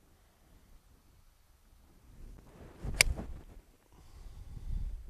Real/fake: real